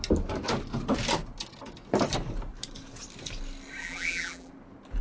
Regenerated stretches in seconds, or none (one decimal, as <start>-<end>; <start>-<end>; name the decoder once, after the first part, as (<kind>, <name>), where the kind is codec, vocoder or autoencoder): 3.8-4.5 (vocoder, BigVGAN v2)